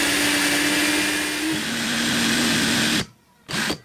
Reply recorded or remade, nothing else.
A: recorded